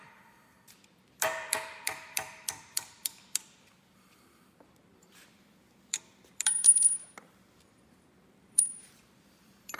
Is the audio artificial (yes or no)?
yes